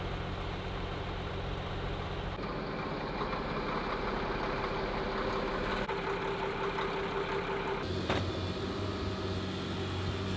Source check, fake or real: real